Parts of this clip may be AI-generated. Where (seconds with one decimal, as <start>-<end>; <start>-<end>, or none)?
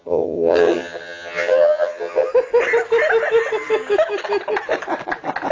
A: 0.0-2.3